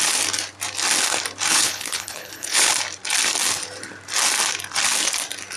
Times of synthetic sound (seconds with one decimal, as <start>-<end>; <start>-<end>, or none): 1.5-2.7

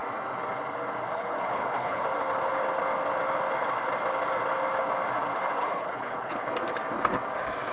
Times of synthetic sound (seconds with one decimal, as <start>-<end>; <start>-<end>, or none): 1.1-2.0; 5.6-6.5

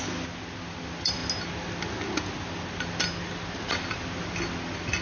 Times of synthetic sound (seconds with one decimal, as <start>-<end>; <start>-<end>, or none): none

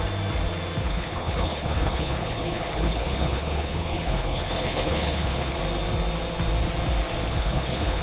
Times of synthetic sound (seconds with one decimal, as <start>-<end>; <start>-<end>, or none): 0.8-5.6; 7.3-8.0

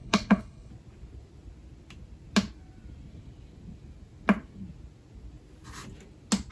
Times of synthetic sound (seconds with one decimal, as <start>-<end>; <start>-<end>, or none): 0.0-0.7